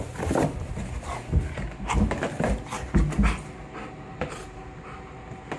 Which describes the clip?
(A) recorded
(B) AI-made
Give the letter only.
A